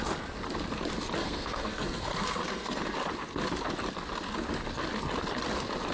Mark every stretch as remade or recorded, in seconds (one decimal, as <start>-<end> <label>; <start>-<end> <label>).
0.0-1.2 recorded; 1.2-2.8 remade; 2.8-5.9 recorded